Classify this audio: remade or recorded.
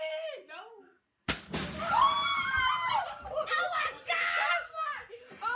recorded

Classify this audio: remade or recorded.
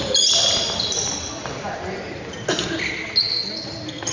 recorded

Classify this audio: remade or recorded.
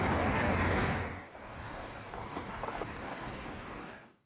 remade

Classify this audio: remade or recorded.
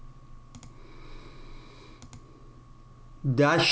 recorded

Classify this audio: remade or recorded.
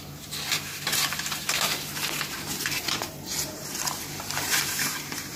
remade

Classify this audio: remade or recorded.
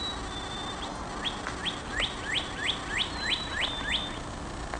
recorded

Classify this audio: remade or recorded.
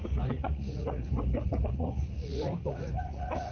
remade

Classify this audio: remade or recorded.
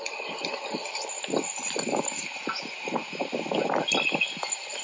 recorded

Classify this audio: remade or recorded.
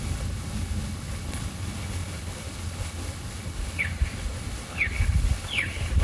remade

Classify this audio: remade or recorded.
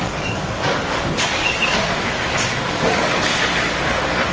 remade